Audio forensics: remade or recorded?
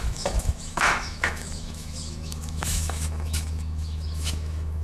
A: remade